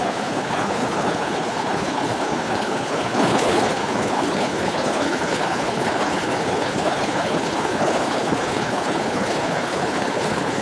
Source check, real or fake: fake